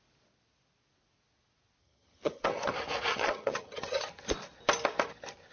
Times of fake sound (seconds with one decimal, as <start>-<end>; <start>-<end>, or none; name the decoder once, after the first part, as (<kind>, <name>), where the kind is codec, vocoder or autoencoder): 1.8-2.7 (vocoder, HiFi-GAN); 3.1-4.0